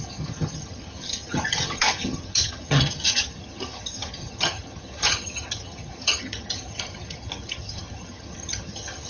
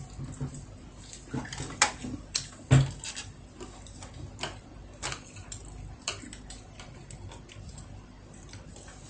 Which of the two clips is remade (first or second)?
first